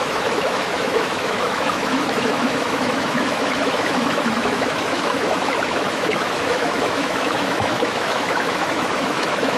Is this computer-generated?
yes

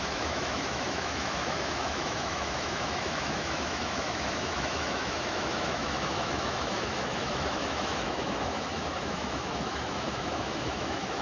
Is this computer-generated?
yes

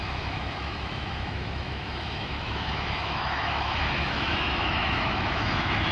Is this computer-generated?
yes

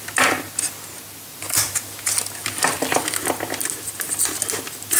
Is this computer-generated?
no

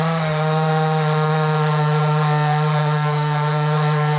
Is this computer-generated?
yes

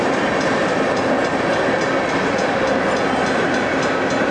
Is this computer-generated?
no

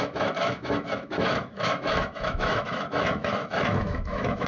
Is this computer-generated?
yes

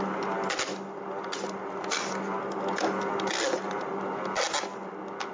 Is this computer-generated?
no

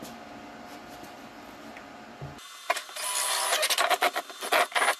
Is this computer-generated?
no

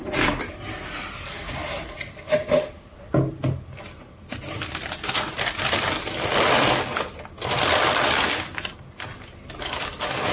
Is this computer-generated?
no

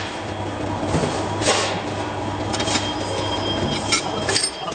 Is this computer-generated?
no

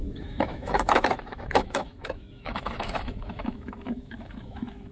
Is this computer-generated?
yes